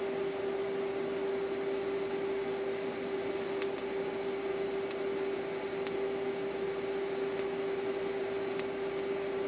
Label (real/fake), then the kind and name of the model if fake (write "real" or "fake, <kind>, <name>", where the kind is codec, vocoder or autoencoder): real